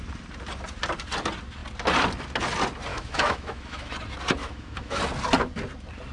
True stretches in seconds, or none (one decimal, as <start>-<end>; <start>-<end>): 0.0-2.9; 3.9-4.4; 5.0-6.1